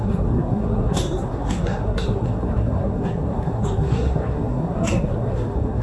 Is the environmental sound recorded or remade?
remade